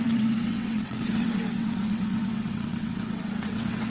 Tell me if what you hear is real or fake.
fake